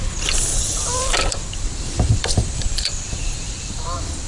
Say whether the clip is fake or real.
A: fake